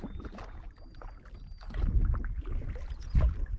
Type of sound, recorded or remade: recorded